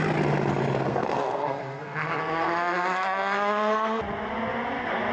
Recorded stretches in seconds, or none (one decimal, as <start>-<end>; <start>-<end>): 0.0-0.9; 4.0-5.1